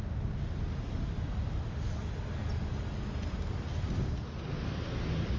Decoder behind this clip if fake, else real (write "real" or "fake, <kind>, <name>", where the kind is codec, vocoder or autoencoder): real